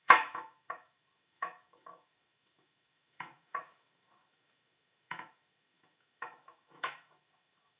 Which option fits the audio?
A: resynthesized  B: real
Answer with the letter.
A